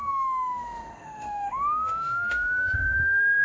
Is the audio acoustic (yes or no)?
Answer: no